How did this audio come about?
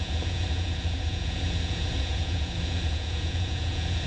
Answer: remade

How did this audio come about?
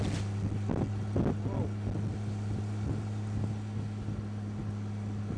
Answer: recorded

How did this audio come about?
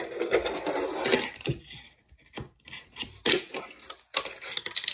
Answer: recorded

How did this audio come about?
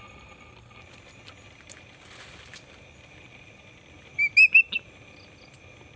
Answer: recorded